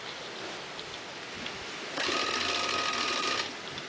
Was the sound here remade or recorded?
recorded